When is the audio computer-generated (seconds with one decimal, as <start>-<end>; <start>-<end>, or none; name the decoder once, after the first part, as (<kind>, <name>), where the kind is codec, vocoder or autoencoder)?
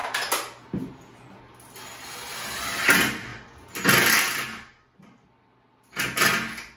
none